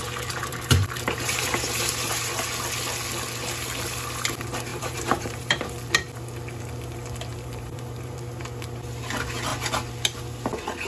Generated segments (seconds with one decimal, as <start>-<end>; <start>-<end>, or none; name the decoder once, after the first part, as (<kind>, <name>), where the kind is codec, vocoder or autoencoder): 0.0-2.3 (vocoder, BigVGAN v2); 4.7-5.7; 7.3-8.4